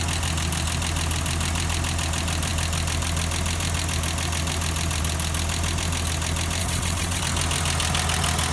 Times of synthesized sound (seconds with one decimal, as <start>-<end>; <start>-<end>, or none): 6.6-7.2